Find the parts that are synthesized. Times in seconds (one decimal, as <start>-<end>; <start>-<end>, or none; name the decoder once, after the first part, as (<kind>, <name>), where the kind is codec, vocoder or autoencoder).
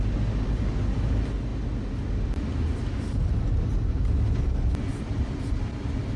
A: none